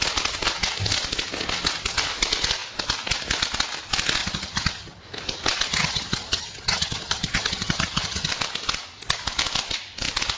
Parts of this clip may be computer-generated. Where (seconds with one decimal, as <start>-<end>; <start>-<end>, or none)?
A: 4.2-5.0; 5.7-8.3